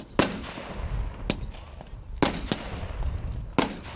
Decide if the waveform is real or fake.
real